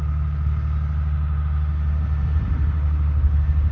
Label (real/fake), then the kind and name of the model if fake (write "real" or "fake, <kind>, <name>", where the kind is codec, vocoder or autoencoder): real